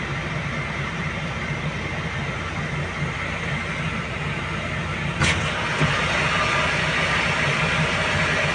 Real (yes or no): yes